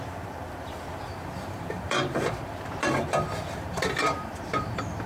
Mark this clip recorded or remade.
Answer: remade